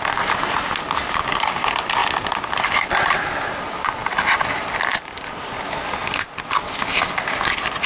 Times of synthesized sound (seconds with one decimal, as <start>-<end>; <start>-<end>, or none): none